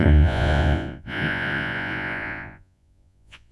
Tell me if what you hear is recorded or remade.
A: remade